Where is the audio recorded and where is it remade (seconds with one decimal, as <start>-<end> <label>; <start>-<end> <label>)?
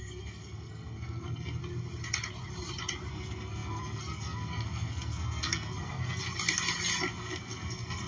0.0-1.6 remade; 1.6-3.1 recorded; 3.1-6.2 remade; 6.2-7.1 recorded; 7.1-8.1 remade